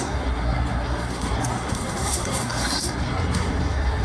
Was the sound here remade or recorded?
remade